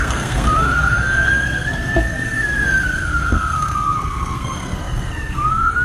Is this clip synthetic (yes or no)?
yes